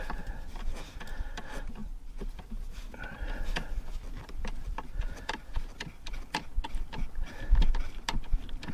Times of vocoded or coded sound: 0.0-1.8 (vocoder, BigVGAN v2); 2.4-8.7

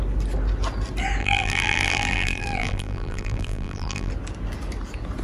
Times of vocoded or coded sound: 1.2-4.1 (vocoder, BigVGAN v2)

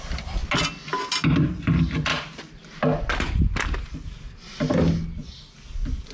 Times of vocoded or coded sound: none

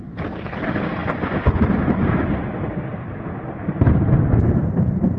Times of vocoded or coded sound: none